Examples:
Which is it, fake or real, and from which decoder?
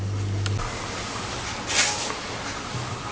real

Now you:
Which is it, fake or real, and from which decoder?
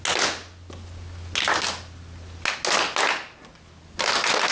real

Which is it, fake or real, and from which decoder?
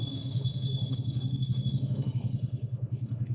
fake, autoencoder, DAC-VAE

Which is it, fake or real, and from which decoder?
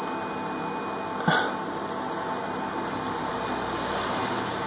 real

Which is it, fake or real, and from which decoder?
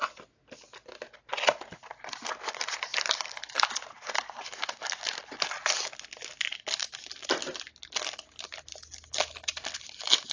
real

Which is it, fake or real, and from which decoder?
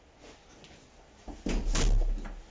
real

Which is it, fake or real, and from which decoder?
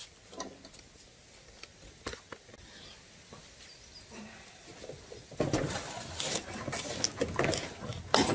real